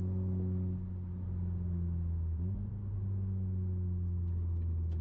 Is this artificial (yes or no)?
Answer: no